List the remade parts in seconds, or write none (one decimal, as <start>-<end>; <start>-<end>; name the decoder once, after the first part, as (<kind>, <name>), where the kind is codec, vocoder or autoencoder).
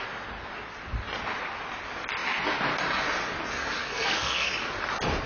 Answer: 3.8-4.5 (codec, SNAC)